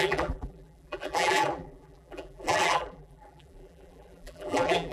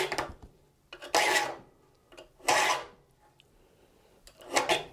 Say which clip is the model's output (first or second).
first